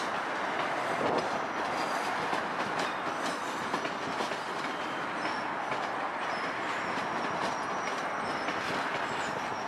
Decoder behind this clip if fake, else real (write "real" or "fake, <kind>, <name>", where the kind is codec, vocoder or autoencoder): real